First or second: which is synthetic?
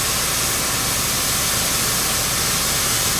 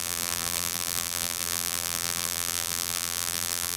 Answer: second